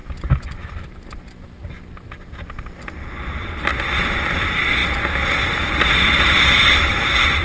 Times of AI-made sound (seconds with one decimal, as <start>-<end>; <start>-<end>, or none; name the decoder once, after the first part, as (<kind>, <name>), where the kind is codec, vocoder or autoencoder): none